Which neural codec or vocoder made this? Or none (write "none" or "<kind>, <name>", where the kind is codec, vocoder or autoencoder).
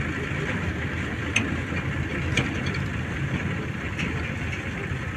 none